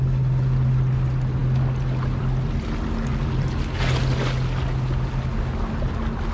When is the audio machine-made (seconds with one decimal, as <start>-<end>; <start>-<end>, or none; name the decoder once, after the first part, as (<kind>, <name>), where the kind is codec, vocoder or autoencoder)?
none